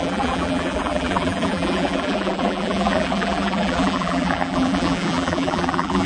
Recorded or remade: remade